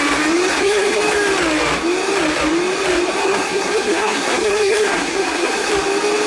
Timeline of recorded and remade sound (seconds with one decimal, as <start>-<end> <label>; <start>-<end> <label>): 0.0-0.5 recorded; 0.5-1.0 remade; 1.0-3.2 recorded; 3.2-5.7 remade; 5.7-6.3 recorded